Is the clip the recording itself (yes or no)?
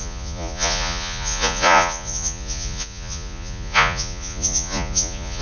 no